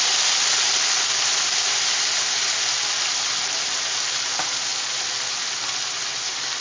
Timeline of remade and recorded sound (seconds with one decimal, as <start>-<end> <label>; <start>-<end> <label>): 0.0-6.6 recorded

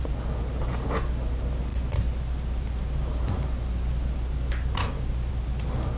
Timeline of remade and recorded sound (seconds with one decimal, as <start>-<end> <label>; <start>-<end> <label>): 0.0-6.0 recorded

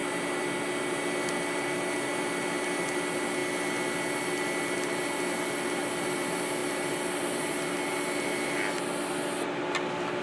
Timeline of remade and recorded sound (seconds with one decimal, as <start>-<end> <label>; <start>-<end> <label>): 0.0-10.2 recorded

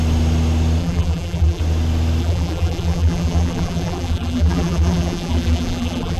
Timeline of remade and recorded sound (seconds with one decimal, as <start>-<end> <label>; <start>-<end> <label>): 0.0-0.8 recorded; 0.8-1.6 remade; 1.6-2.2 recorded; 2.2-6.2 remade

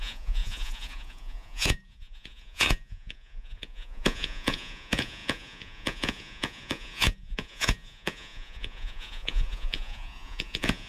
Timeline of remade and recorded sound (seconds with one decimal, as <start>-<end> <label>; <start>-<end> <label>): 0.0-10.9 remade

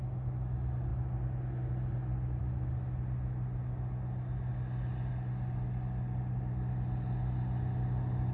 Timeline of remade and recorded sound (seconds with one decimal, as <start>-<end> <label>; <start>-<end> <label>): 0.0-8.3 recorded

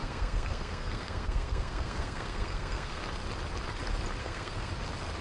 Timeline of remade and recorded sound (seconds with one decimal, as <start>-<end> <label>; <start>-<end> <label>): 0.0-3.1 remade; 3.1-4.2 recorded; 4.2-4.7 remade; 4.7-5.2 recorded